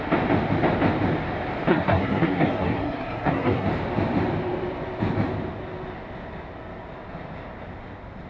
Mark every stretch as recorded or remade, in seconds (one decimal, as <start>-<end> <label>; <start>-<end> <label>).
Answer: 0.0-1.7 recorded; 1.7-3.7 remade; 3.7-8.3 recorded

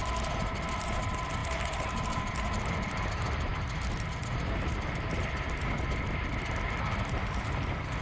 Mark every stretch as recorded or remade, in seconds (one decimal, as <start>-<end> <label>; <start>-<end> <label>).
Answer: 0.0-1.4 recorded; 1.4-2.3 remade; 2.3-8.0 recorded

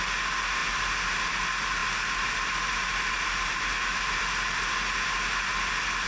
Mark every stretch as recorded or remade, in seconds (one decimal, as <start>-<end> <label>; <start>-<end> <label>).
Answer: 0.0-6.1 recorded